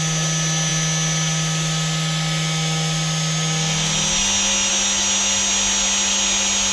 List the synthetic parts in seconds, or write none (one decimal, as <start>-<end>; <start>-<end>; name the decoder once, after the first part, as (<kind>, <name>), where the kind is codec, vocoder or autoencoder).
none